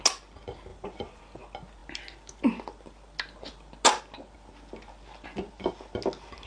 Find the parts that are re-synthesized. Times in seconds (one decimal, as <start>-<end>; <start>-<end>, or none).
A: 0.7-1.2